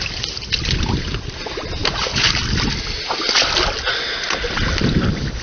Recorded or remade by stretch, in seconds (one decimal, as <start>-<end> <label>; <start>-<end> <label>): 0.0-5.4 recorded